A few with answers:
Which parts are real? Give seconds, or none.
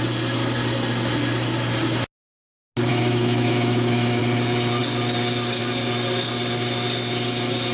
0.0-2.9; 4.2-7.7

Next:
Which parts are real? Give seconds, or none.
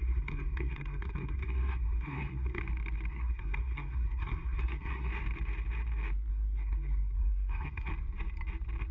2.6-3.1; 5.1-6.3; 7.9-8.9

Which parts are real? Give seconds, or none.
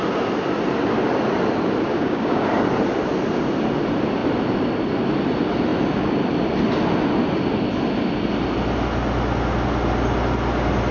0.0-1.9; 2.5-10.9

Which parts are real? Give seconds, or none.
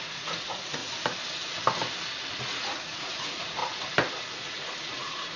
0.8-2.4; 3.6-4.3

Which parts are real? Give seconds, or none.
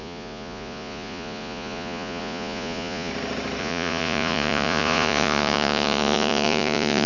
3.1-3.6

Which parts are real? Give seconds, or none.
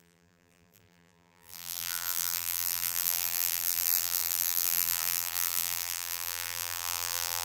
none